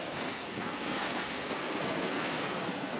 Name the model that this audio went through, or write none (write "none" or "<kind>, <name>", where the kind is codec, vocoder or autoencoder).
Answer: codec, SNAC